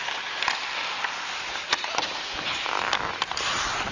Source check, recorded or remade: recorded